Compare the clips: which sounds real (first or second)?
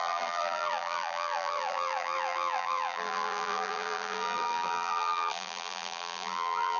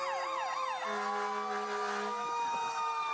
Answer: second